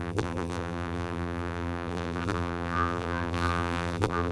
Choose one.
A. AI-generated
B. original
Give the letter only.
A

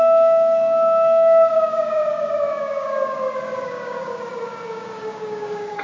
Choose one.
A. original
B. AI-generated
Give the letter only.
B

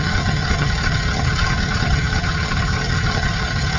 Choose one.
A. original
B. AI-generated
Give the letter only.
B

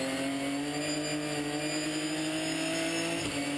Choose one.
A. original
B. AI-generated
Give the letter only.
A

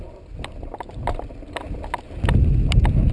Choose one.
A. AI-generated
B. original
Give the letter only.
B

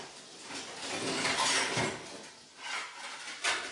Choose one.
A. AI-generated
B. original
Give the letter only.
B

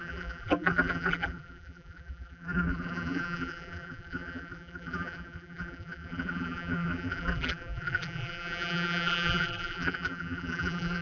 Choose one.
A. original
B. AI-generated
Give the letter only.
B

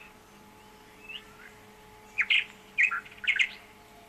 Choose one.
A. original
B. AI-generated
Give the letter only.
A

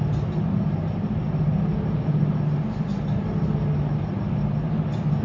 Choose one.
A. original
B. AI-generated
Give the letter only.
A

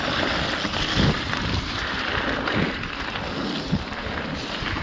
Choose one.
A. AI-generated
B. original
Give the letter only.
B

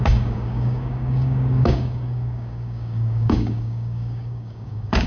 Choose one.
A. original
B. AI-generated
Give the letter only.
B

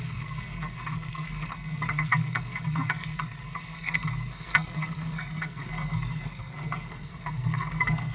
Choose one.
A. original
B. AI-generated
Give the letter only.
B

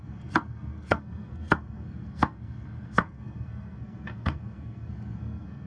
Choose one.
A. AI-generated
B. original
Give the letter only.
A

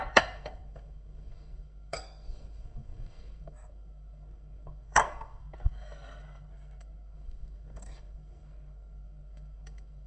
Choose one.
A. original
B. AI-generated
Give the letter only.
B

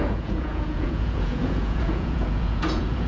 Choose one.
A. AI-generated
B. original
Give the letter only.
A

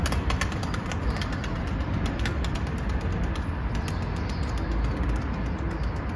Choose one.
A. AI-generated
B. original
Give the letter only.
B